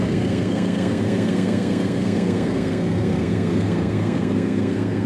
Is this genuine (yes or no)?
no